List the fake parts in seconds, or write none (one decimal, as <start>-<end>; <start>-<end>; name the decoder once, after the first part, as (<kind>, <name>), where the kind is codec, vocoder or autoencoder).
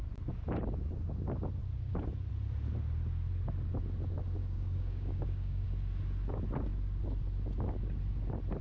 4.4-5.7 (codec, DAC)